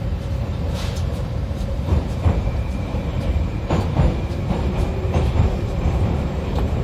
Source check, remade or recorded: remade